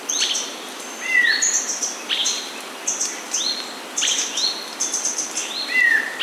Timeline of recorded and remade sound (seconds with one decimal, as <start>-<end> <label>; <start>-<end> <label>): 0.0-6.2 recorded